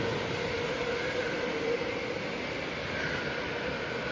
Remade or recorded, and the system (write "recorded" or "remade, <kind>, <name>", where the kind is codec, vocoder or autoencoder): recorded